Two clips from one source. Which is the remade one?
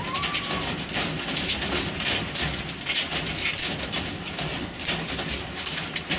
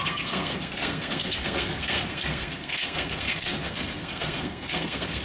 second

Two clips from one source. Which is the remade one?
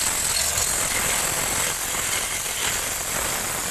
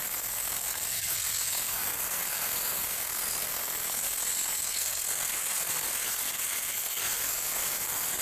second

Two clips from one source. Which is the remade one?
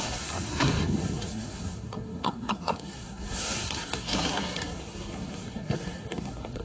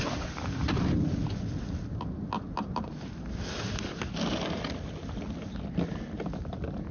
first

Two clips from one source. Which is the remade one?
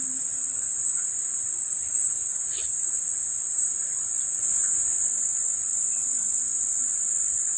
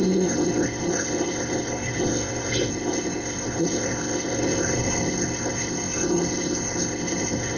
second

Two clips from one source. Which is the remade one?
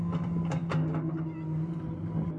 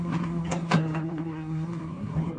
second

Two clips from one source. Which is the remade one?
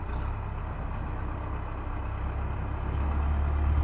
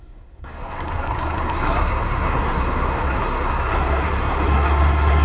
second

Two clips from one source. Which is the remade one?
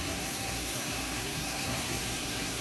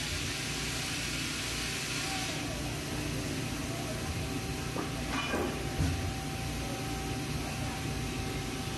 first